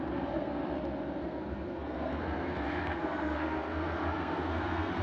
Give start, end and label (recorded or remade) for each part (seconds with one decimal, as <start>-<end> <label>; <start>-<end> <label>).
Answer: 0.0-0.6 remade; 0.6-1.2 recorded; 1.2-5.0 remade